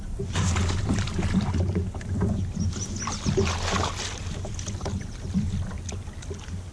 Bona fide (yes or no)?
yes